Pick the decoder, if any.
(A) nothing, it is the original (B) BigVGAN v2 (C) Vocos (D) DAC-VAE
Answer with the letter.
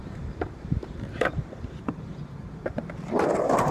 B